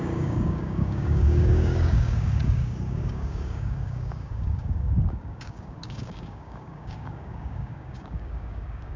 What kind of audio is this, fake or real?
fake